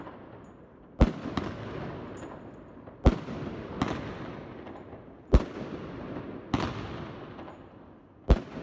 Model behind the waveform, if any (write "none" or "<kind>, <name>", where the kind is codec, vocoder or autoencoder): none